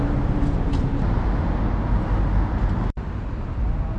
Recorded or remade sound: recorded